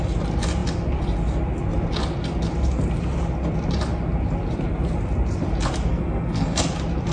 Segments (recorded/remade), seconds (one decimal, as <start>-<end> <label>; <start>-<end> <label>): 0.0-5.9 recorded; 5.9-6.6 remade; 6.6-7.1 recorded